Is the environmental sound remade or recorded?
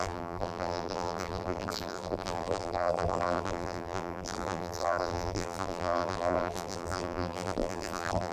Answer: remade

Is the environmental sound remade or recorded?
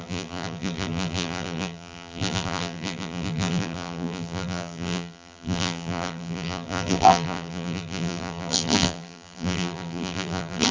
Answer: remade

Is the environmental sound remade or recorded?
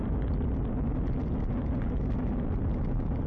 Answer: recorded